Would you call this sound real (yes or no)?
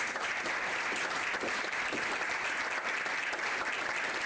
yes